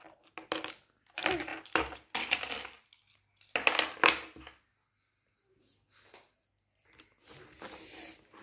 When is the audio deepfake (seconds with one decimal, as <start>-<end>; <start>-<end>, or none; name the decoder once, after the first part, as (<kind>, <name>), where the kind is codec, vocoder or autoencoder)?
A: none